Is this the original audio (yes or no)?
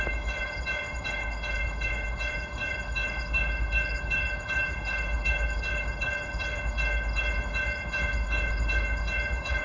no